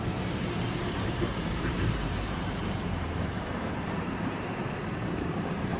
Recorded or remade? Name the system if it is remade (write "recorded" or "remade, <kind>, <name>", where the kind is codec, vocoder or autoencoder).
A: remade, vocoder, BigVGAN v2